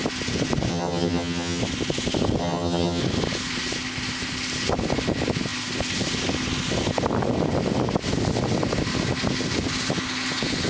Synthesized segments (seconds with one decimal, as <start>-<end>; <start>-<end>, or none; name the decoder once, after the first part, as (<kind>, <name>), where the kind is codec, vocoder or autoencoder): 0.7-1.6 (vocoder, HiFi-GAN); 2.4-3.0